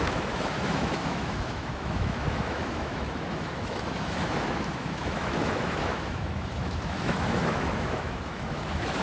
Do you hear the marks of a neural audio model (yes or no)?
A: yes